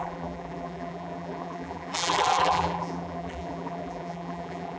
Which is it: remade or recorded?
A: remade